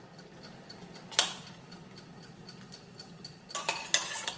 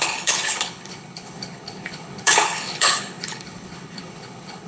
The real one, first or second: first